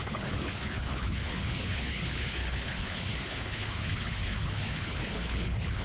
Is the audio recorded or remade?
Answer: remade